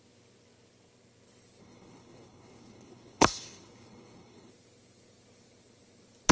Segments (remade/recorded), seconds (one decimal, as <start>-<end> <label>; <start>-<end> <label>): 0.0-1.6 recorded; 1.6-4.5 remade; 4.5-6.3 recorded